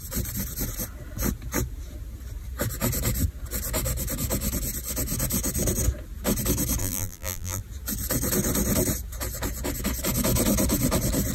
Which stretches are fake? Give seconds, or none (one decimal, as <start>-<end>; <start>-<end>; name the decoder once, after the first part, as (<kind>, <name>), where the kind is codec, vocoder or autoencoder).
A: 6.8-7.6 (vocoder, BigVGAN v2)